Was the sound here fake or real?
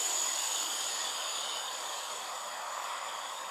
fake